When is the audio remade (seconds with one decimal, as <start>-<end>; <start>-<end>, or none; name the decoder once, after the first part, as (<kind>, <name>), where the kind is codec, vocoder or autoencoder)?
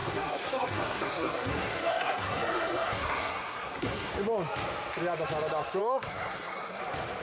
0.0-4.1 (codec, SNAC); 5.8-6.8